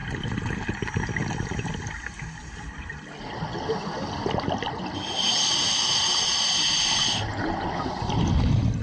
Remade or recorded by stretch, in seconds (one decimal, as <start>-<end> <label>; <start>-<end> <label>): 0.0-8.8 recorded